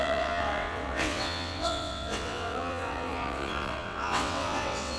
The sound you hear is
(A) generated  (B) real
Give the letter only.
A